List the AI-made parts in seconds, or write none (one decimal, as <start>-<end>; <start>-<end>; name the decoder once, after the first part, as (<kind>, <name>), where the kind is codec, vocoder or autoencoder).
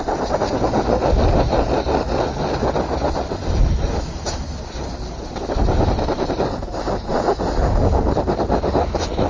none